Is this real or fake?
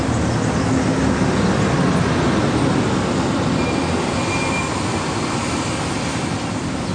real